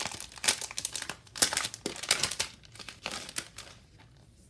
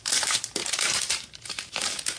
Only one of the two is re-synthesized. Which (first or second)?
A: second